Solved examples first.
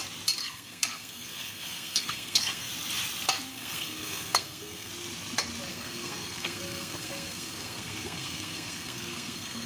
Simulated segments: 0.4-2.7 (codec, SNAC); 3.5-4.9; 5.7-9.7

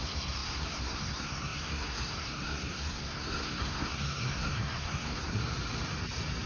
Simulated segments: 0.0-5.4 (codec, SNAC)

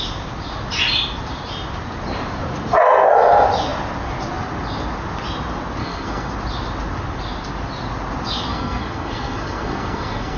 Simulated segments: 5.8-6.3 (codec, SNAC); 8.5-10.4

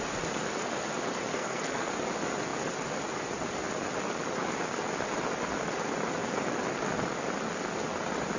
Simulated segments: 1.3-1.9 (codec, SNAC)

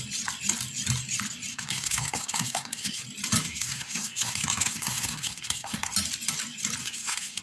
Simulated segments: 1.5-3.0 (codec, SNAC); 3.4-5.9; 6.8-7.4

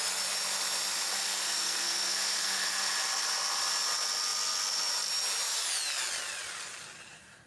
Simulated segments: 1.1-2.9 (codec, SNAC)

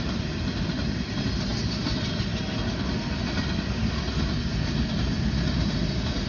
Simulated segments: none

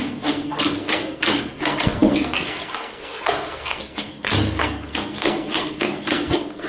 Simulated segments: 0.0-6.7 (codec, SNAC)